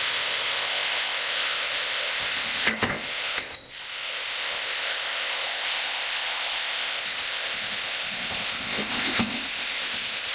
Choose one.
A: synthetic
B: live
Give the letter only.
A